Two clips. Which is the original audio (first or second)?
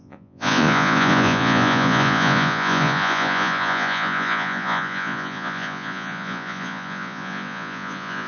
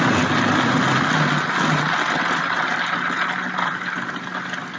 second